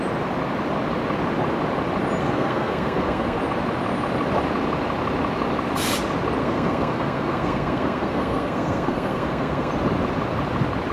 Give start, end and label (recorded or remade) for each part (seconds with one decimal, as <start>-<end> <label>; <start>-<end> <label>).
0.0-2.2 recorded; 2.2-3.4 remade; 3.4-6.4 recorded; 6.4-9.7 remade; 9.7-10.9 recorded